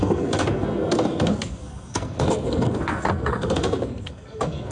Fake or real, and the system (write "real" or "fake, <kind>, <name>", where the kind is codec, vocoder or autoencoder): fake, codec, SNAC